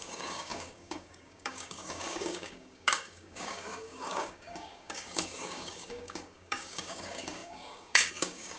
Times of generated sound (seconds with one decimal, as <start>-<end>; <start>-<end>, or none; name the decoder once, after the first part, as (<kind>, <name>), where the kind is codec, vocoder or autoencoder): 0.0-8.6 (codec, DAC)